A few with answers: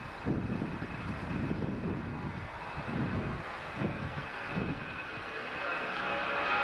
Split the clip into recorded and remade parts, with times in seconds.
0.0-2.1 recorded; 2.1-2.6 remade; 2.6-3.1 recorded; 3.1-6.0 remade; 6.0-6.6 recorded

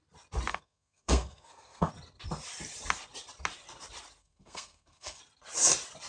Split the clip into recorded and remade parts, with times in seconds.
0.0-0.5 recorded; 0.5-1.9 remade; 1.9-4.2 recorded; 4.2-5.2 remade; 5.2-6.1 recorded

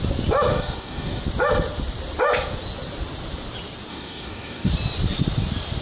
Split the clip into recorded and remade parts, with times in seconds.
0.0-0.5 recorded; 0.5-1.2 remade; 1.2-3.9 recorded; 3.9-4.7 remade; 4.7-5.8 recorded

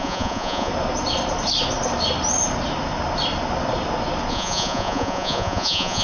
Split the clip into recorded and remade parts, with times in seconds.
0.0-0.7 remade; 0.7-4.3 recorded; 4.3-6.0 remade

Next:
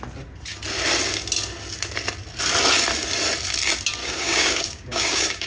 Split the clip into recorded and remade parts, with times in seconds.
0.0-4.0 recorded; 4.0-5.5 remade